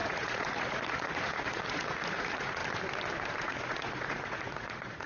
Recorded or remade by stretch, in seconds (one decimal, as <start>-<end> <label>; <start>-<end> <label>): 0.0-2.6 remade; 2.6-3.4 recorded; 3.4-5.1 remade